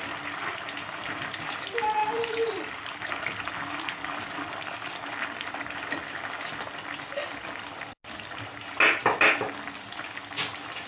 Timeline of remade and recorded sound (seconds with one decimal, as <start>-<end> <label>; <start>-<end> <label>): 0.0-2.0 recorded; 2.0-3.2 remade; 3.2-10.9 recorded